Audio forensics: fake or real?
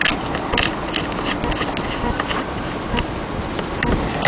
real